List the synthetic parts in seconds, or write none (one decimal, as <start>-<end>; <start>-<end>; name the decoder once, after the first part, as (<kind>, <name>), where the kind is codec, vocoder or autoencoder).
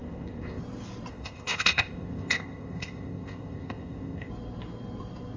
0.0-0.6 (codec, ZipCodec); 1.1-4.3